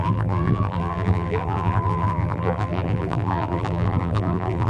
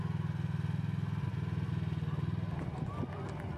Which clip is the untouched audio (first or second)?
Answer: second